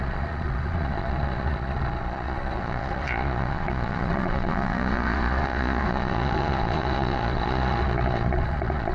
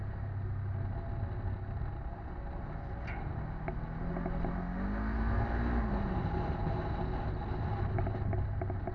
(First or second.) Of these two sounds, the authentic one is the second